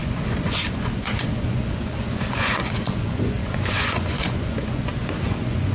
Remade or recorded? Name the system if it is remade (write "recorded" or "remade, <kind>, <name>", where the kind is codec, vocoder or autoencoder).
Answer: remade, vocoder, Vocos